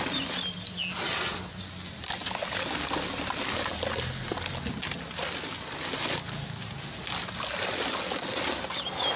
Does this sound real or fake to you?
real